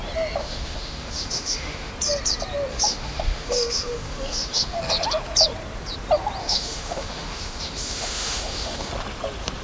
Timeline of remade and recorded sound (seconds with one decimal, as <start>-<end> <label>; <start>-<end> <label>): 0.0-0.4 recorded; 0.4-1.9 remade; 1.9-2.7 recorded; 2.7-4.8 remade; 4.8-6.4 recorded; 6.4-8.9 remade; 8.9-9.6 recorded